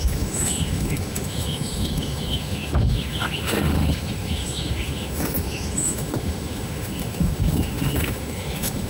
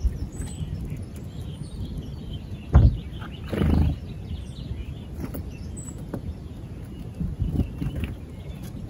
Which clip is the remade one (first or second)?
first